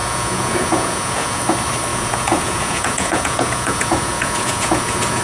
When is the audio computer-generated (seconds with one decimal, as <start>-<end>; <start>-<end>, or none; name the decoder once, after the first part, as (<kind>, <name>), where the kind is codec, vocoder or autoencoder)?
0.0-1.4 (vocoder, Vocos); 1.9-5.2